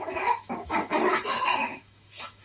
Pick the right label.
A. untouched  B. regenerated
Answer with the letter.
B